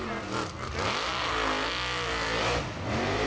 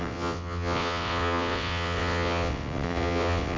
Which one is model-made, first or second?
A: second